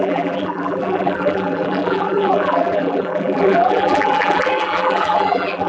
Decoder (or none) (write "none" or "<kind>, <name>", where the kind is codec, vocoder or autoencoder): vocoder, BigVGAN v2